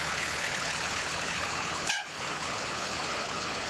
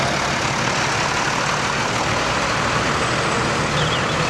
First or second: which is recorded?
second